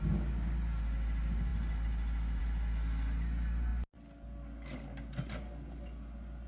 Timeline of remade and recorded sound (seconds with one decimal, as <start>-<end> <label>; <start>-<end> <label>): 0.0-6.5 recorded